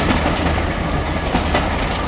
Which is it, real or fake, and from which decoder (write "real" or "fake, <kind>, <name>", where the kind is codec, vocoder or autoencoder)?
real